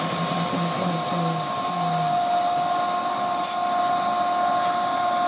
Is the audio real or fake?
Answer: real